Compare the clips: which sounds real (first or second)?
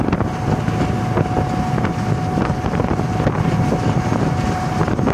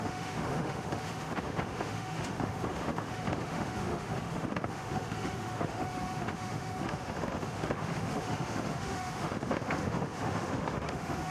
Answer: first